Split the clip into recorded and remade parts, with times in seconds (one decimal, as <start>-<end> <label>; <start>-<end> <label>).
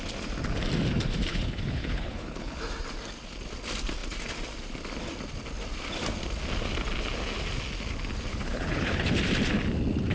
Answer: 0.0-1.3 recorded; 1.3-2.6 remade; 2.6-8.3 recorded; 8.3-9.2 remade; 9.2-10.1 recorded